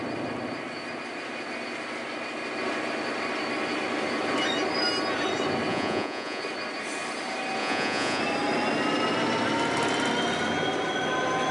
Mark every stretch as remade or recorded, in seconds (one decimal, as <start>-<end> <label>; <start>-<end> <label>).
0.0-5.7 recorded; 5.7-6.4 remade; 6.4-7.6 recorded; 7.6-8.2 remade; 8.2-11.5 recorded